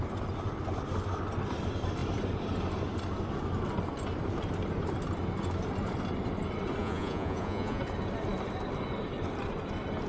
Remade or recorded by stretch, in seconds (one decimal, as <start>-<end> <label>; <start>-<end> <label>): 0.0-6.8 recorded; 6.8-7.8 remade; 7.8-10.1 recorded